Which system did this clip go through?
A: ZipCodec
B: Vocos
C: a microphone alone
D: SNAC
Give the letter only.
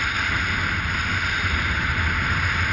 C